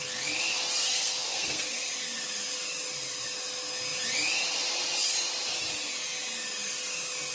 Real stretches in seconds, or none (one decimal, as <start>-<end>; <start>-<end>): 0.0-0.8; 1.9-7.3